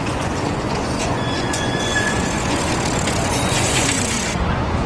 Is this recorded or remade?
remade